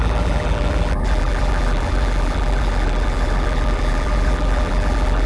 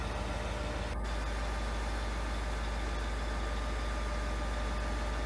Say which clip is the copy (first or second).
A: first